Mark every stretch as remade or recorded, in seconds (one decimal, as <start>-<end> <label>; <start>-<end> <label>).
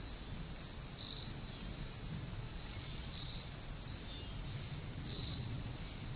0.0-2.5 recorded; 2.5-3.5 remade; 3.5-5.1 recorded; 5.1-5.8 remade; 5.8-6.2 recorded